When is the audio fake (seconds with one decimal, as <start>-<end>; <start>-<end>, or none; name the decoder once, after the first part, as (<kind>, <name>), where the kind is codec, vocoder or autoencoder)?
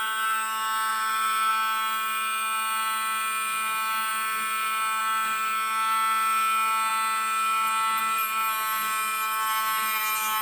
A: 0.9-1.5 (vocoder, BigVGAN v2)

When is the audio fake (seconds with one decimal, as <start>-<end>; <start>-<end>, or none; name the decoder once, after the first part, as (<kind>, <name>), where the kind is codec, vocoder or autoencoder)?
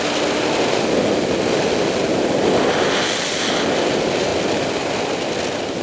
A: none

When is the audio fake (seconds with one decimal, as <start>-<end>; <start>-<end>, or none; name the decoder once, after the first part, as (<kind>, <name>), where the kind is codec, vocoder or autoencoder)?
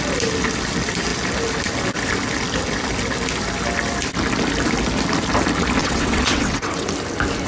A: 5.8-6.9 (vocoder, WaveNeXt)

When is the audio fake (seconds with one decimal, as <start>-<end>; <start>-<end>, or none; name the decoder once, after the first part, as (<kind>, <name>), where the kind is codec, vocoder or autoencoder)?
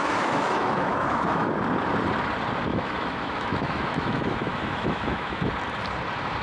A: 0.0-1.5 (autoencoder, DAC-VAE); 2.7-5.5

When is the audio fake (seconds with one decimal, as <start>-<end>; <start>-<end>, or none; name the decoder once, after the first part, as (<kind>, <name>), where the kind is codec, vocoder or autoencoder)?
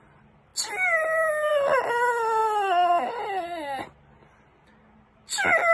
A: none